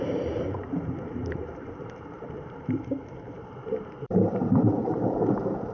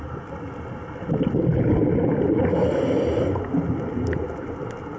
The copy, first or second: first